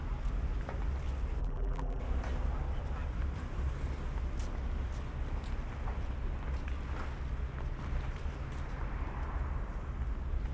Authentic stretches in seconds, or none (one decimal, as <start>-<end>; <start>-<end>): 0.0-1.4; 2.0-10.5